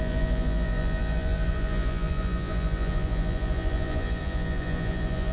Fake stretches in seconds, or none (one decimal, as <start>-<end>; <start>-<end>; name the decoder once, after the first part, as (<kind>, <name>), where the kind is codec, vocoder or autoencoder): 0.0-5.3 (vocoder, Vocos)